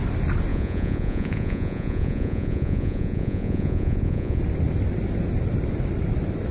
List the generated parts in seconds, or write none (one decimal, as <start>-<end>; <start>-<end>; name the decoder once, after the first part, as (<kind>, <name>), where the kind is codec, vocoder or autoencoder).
0.5-4.4 (vocoder, Vocos)